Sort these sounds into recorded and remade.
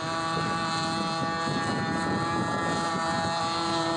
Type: recorded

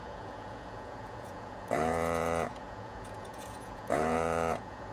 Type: remade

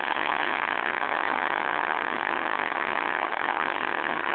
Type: remade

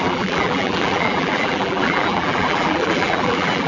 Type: remade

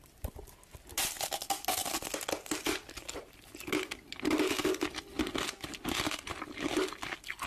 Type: recorded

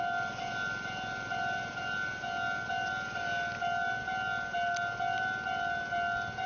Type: recorded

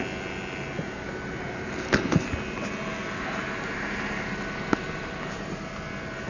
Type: recorded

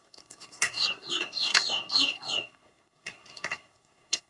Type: remade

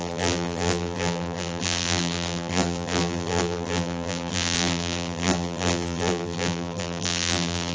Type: remade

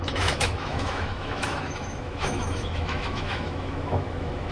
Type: remade